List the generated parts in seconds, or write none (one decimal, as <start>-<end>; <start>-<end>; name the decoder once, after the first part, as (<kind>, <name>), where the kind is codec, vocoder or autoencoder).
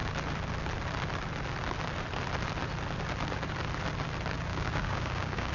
4.5-5.5 (codec, DAC)